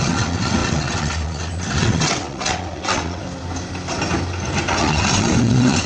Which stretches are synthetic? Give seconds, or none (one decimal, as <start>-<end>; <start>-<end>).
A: 0.0-3.2; 4.7-5.9